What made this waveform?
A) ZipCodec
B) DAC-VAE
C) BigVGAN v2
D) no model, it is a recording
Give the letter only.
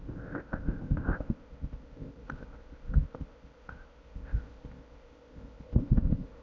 A